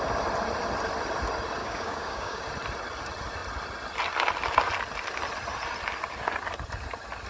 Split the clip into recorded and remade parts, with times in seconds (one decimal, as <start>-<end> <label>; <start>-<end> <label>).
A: 0.0-1.6 recorded; 1.6-2.4 remade; 2.4-7.3 recorded